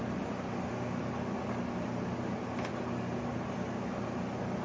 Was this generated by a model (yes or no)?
no